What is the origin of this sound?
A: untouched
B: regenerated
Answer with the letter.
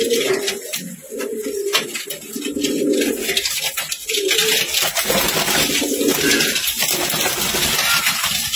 A